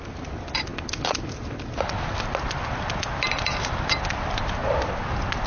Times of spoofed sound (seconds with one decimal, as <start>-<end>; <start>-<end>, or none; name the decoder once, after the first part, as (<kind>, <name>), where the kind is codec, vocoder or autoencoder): none